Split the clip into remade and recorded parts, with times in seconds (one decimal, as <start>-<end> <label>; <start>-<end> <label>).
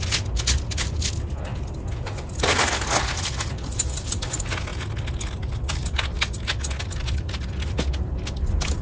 0.0-8.8 recorded